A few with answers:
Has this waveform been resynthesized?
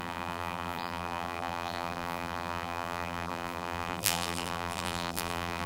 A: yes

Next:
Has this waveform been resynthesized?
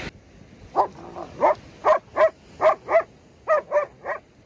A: no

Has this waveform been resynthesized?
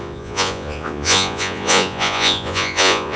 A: yes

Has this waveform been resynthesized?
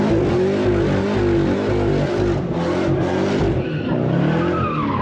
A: no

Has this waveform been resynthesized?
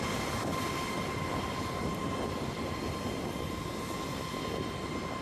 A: no